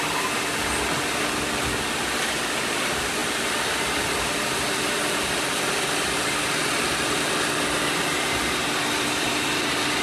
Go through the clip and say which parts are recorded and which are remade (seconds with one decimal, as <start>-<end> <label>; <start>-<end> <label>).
0.0-10.0 recorded